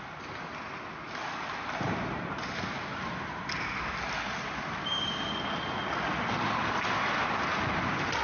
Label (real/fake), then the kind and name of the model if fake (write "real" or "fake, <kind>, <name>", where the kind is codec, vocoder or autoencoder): real